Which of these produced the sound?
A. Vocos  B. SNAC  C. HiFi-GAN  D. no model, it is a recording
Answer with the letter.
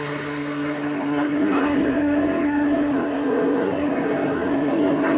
B